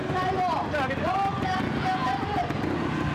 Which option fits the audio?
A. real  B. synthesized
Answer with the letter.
A